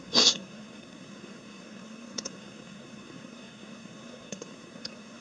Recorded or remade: remade